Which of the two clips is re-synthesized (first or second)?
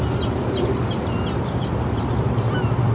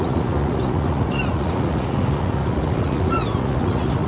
second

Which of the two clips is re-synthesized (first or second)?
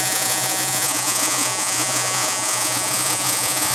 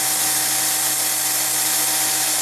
first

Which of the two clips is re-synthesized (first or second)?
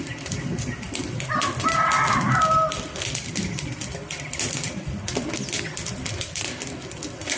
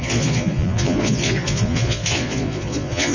second